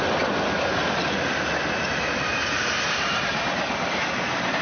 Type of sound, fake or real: real